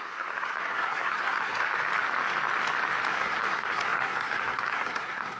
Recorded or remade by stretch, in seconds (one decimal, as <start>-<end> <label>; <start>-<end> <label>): 0.0-1.7 remade; 1.7-3.1 recorded; 3.1-5.4 remade